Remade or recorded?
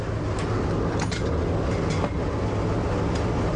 recorded